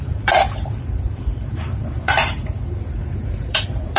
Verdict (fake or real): fake